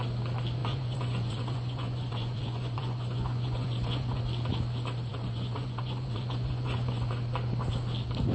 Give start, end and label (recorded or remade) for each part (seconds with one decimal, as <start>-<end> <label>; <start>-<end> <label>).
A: 0.0-0.6 recorded; 0.6-4.2 remade; 4.2-5.1 recorded; 5.1-7.1 remade; 7.1-8.3 recorded